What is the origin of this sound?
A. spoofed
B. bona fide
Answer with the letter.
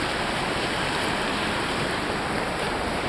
B